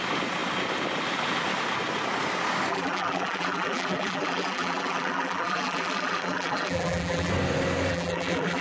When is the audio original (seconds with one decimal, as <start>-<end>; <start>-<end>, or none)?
0.0-2.7; 7.3-7.9